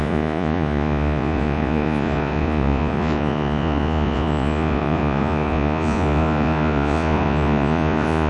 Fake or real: fake